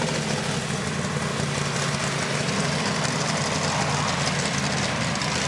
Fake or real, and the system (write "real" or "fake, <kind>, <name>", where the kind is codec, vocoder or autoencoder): real